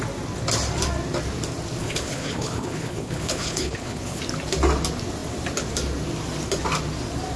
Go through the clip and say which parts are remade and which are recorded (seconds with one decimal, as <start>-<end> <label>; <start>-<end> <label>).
0.0-1.8 recorded; 1.8-4.2 remade; 4.2-7.4 recorded